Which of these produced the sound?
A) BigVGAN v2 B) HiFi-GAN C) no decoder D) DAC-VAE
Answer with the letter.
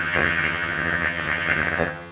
B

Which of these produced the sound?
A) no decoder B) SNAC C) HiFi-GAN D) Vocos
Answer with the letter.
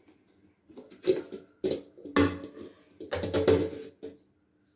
A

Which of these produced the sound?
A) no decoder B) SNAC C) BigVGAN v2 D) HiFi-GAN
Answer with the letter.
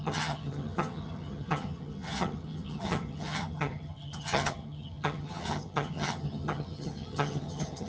D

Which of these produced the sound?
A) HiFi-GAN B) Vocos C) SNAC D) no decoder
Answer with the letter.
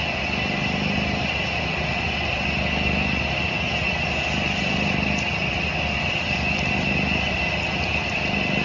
D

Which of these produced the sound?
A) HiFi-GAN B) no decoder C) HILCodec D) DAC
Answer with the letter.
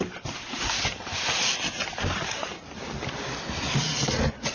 B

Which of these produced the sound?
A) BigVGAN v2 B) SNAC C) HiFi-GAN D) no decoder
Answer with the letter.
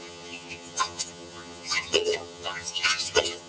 C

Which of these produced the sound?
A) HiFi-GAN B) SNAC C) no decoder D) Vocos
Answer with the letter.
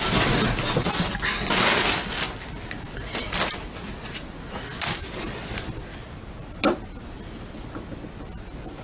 C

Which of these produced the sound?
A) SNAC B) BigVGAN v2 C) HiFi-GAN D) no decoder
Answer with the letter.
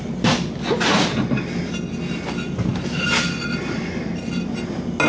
D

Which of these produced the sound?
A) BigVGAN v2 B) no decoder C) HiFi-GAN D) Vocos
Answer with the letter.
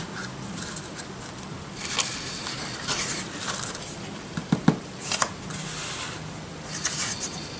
B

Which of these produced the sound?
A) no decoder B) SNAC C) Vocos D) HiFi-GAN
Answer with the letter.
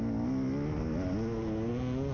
A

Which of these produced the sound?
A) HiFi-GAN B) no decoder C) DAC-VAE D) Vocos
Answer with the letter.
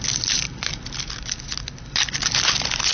B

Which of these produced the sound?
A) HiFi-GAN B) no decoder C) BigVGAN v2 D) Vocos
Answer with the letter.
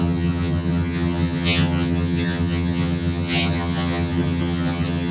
A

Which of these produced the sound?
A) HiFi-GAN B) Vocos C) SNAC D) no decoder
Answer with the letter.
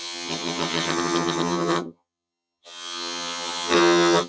A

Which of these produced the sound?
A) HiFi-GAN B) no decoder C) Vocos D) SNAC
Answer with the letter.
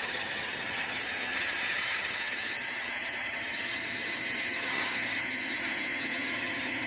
A